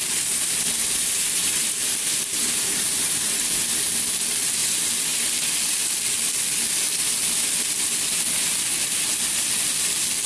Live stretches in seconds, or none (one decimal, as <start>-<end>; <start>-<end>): 0.0-0.8; 3.5-4.6; 5.3-10.3